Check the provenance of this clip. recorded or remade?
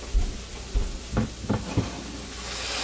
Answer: recorded